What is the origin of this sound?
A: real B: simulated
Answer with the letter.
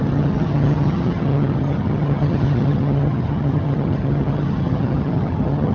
B